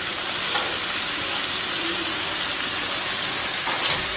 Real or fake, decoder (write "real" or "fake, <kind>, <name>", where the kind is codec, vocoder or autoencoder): real